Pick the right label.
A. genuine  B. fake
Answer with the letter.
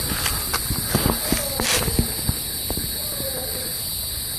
A